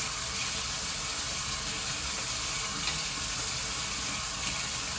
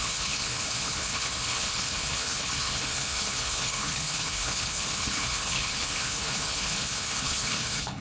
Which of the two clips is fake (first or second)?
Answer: second